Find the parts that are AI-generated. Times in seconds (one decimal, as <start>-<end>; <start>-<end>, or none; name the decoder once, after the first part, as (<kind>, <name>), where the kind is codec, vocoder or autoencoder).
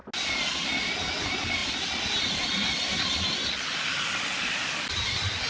none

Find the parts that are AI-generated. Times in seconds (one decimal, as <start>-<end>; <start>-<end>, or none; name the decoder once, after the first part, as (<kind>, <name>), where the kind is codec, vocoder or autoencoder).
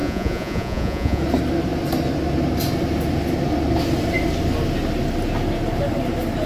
0.0-1.2 (vocoder, Vocos)